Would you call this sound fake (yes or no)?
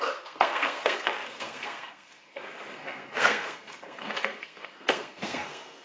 yes